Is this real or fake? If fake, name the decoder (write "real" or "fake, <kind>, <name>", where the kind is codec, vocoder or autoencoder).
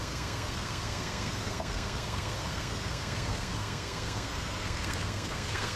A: fake, codec, SNAC